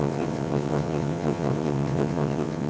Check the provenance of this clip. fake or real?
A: fake